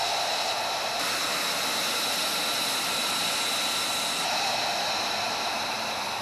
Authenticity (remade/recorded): recorded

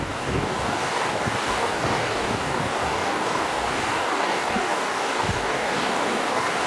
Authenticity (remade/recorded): remade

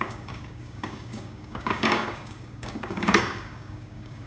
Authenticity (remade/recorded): remade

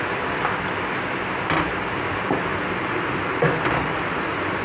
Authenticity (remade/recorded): recorded